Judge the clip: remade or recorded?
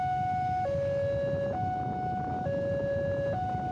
recorded